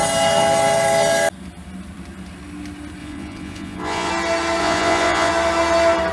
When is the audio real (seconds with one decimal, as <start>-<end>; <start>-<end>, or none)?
0.0-3.0; 4.1-4.6; 5.3-6.1